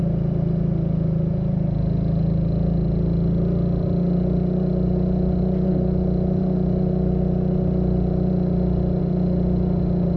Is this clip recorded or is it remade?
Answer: recorded